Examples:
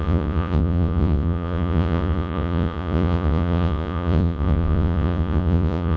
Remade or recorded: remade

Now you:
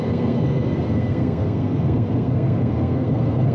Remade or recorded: remade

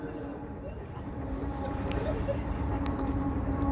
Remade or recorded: remade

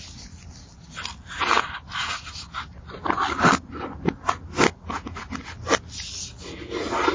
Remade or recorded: recorded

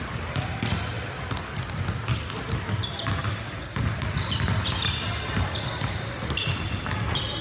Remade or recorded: recorded